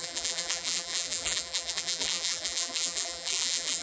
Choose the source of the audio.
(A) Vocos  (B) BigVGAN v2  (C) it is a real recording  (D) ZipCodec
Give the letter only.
B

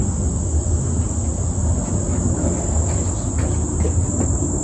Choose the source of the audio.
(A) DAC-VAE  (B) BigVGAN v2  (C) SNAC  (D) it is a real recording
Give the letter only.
D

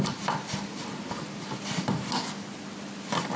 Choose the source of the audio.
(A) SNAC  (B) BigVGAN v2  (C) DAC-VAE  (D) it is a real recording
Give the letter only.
D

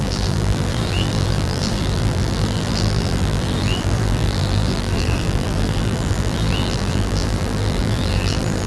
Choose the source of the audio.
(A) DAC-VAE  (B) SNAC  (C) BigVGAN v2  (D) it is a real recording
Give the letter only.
C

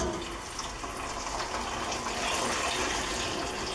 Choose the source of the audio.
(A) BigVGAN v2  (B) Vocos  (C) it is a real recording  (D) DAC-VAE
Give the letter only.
C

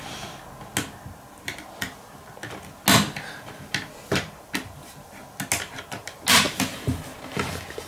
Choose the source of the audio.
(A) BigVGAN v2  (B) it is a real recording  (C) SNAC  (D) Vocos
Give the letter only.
B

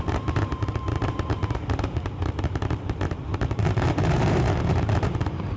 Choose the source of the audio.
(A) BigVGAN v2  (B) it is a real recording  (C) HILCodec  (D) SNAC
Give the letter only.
A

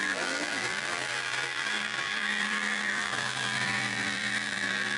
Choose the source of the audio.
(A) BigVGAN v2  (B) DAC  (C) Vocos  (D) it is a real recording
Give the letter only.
A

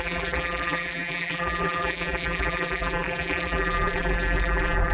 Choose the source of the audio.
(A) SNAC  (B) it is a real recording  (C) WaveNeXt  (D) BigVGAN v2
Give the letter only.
D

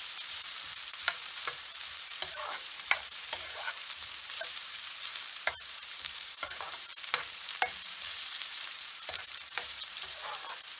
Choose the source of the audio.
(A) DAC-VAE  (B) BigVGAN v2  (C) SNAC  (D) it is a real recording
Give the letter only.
B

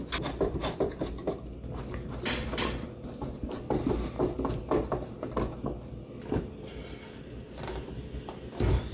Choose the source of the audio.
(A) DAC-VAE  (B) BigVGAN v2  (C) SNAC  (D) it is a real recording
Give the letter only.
D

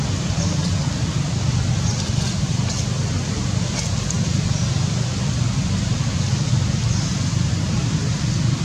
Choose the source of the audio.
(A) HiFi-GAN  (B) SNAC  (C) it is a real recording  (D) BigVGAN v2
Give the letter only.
C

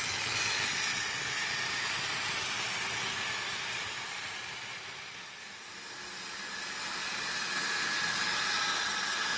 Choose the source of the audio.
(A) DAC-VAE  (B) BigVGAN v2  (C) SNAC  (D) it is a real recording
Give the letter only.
D